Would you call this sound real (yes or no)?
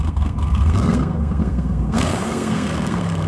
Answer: no